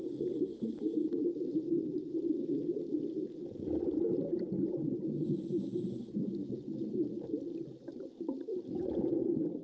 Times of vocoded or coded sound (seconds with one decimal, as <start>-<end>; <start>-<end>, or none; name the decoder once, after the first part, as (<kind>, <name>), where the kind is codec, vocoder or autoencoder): none

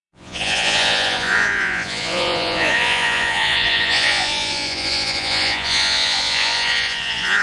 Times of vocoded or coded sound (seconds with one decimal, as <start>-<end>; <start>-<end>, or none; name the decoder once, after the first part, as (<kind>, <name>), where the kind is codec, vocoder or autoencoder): 0.0-7.4 (vocoder, Vocos)

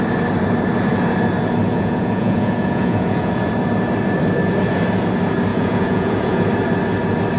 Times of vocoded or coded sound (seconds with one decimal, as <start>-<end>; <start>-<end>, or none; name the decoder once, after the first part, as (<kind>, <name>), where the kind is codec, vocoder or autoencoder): 1.7-3.5 (vocoder, Vocos); 5.5-6.5

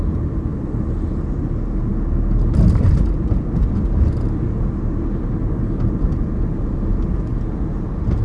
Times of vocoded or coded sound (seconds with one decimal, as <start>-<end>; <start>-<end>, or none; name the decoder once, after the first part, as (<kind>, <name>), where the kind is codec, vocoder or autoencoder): none

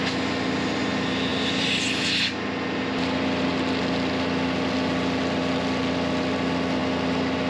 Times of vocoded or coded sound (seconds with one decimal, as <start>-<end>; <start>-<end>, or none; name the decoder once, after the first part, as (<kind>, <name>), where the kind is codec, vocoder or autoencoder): none